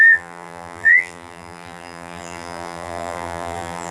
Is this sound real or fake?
fake